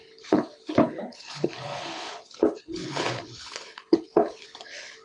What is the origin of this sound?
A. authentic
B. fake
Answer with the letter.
B